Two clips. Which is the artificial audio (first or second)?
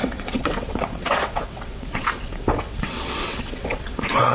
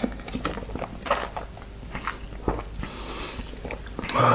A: first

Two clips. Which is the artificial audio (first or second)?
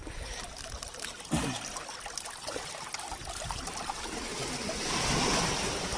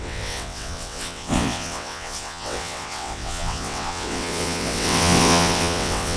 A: second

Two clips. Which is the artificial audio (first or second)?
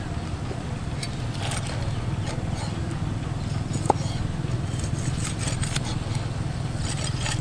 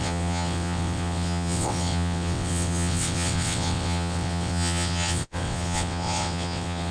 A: second